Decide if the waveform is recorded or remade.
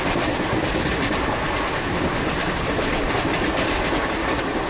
recorded